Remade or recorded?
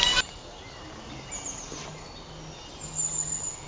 recorded